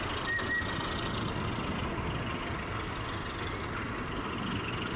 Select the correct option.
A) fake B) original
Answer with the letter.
B